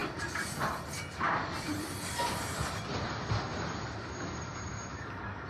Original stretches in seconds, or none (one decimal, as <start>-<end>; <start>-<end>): 3.0-3.5; 4.8-5.5